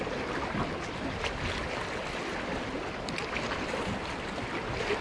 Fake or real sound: real